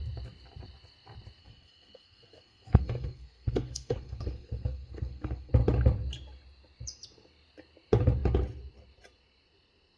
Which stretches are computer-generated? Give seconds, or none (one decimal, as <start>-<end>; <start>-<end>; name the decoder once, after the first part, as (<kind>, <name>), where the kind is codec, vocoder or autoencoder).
1.4-5.5 (codec, SNAC)